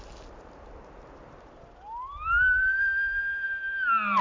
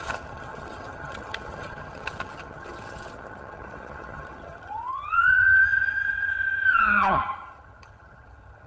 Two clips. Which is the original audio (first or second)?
first